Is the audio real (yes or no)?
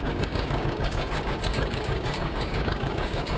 no